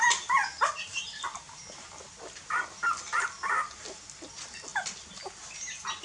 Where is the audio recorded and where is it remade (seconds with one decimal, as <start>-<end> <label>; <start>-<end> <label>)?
0.0-6.0 recorded